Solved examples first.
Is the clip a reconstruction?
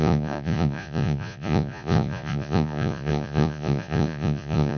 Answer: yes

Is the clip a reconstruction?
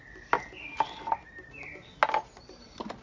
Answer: no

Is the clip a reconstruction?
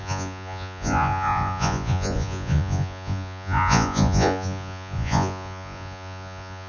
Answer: yes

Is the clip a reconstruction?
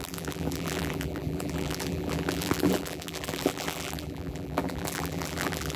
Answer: yes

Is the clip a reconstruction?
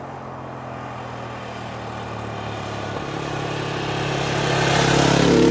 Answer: no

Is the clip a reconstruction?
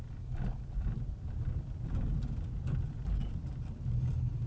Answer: no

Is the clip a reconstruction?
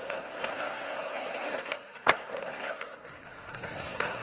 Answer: yes